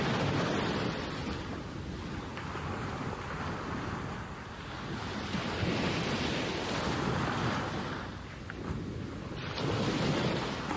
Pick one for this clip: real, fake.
real